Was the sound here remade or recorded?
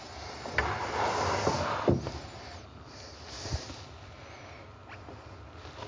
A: recorded